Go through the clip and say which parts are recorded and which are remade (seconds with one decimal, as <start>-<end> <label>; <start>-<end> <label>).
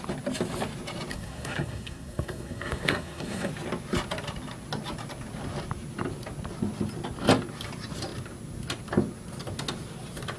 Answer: 0.0-1.1 recorded; 1.1-3.5 remade; 3.5-10.4 recorded